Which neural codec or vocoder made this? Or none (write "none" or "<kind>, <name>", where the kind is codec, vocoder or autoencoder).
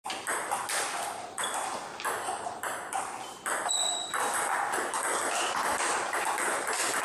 none